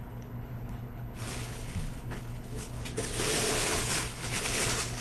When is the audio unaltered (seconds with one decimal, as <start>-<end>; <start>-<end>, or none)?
2.8-3.5